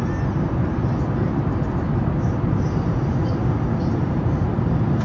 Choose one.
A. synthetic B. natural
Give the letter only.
B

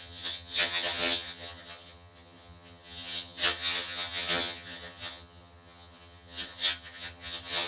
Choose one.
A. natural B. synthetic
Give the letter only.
B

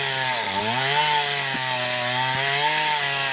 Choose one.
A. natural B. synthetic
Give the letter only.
A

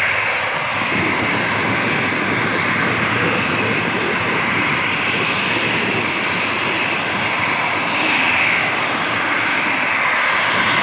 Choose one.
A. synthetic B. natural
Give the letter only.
B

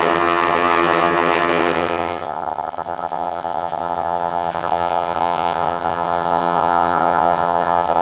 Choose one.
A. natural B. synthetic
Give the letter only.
B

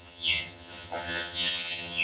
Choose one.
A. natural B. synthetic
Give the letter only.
B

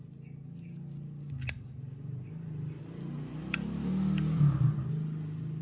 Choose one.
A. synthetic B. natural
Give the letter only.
B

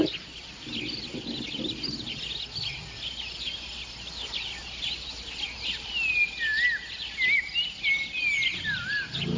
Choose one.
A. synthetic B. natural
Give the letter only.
B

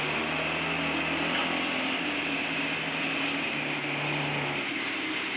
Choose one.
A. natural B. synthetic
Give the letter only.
A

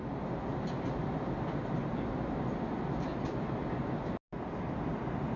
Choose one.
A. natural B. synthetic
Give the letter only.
A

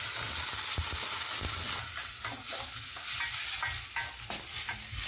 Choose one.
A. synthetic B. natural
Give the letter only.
B